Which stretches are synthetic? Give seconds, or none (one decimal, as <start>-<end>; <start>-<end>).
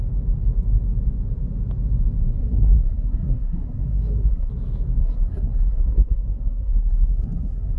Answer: 2.4-4.5; 5.0-7.8